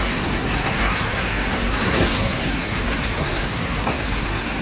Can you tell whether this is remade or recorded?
remade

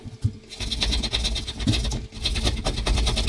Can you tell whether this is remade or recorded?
recorded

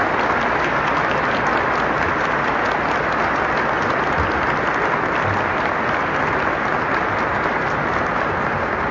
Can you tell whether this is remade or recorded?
recorded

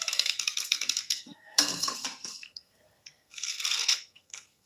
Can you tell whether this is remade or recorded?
remade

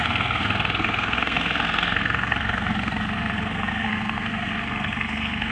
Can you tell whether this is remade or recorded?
remade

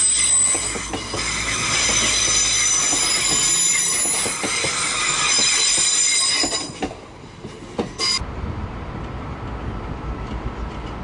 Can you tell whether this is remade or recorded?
recorded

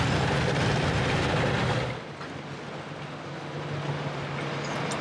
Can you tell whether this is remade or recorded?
recorded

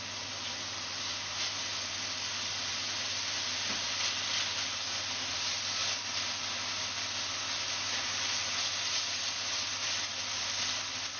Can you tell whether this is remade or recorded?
recorded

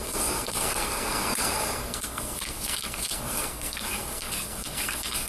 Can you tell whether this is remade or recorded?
remade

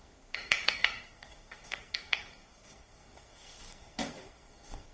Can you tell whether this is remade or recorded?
remade